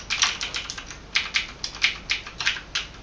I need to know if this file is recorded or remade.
recorded